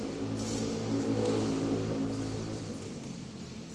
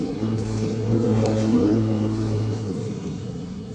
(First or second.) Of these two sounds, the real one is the first